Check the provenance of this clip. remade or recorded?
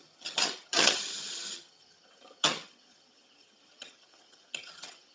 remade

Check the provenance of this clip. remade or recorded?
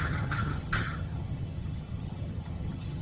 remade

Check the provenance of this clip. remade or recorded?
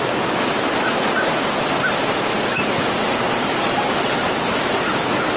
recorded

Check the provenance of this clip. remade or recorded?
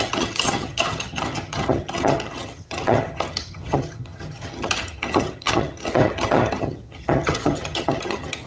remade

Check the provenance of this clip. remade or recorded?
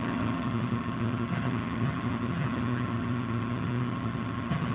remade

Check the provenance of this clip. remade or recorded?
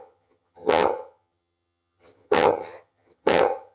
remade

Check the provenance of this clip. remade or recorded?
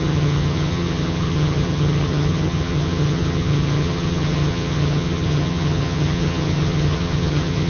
remade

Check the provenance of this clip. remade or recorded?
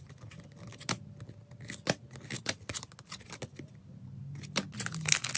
recorded